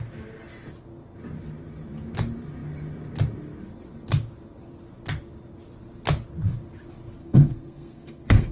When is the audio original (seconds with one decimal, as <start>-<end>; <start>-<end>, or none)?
0.0-7.2